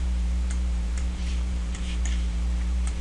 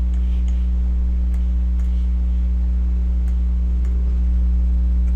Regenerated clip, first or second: first